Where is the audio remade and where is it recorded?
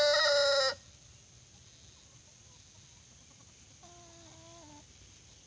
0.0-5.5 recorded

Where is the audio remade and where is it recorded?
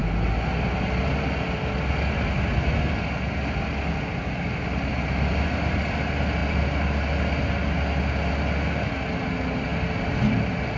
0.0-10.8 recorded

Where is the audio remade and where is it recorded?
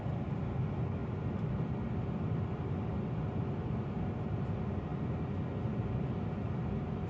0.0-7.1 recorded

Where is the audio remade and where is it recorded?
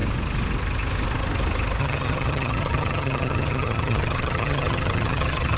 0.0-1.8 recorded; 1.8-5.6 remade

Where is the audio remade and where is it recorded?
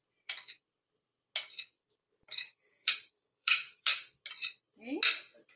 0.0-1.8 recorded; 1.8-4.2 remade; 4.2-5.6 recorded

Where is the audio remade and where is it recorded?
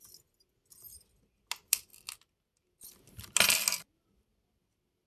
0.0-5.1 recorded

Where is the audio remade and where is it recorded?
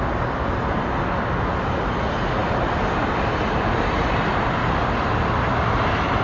0.0-6.2 recorded